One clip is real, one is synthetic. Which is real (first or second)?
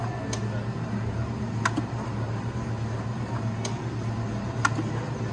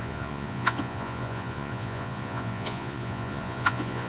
first